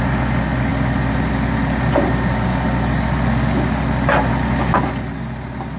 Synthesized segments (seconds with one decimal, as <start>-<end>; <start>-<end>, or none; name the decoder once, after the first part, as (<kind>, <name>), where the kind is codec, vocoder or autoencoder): none